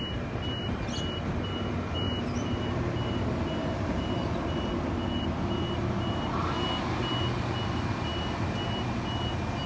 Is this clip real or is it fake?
real